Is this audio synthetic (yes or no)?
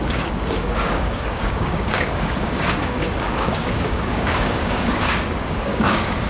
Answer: yes